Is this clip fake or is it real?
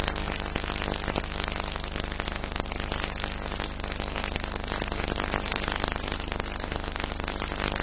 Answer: real